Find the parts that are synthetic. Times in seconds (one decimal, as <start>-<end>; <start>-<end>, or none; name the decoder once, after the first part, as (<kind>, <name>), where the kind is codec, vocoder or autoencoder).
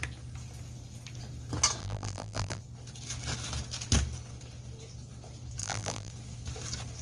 1.8-2.6 (vocoder, BigVGAN v2); 5.6-6.1